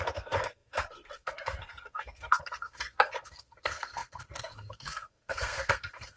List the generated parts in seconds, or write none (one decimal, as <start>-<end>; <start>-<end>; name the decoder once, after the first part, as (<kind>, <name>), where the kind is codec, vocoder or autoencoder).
0.0-6.2 (codec, SNAC)